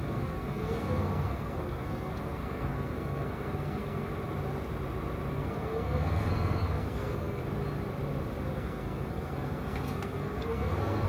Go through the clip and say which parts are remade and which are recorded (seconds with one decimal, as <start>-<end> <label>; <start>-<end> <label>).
0.0-4.1 remade; 4.1-5.3 recorded; 5.3-7.4 remade; 7.4-8.5 recorded; 8.5-11.1 remade